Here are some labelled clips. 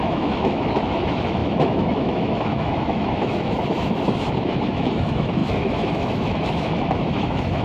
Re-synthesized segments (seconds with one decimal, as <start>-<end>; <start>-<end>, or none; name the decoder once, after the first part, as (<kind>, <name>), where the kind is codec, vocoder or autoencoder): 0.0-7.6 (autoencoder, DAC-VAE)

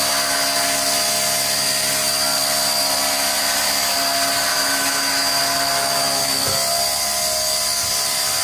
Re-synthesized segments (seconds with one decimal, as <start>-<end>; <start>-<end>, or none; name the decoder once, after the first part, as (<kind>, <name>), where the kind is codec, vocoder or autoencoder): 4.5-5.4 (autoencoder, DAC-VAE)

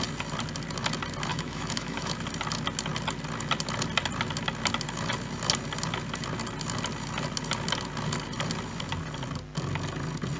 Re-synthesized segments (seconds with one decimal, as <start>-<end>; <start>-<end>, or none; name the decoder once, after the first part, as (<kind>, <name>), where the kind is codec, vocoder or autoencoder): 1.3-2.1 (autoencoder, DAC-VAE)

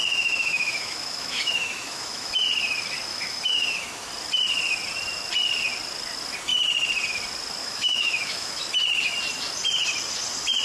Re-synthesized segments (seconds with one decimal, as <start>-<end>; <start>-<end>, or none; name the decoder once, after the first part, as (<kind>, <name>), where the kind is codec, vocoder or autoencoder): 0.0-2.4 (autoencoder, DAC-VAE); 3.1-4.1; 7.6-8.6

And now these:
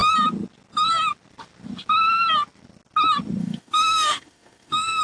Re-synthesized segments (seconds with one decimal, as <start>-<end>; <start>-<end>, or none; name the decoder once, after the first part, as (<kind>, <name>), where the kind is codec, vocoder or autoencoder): 3.4-5.0 (autoencoder, DAC-VAE)